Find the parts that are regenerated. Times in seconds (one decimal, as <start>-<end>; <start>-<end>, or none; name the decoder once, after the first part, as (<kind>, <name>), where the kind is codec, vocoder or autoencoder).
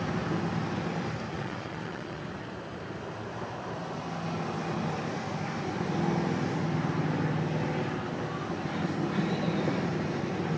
1.3-2.2 (vocoder, Vocos)